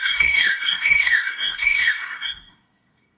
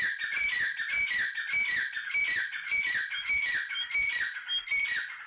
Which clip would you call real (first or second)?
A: second